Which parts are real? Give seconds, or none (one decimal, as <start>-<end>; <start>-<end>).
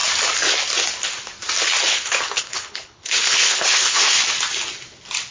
0.0-1.9; 4.2-5.3